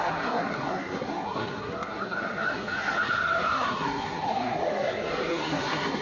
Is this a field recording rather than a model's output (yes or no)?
no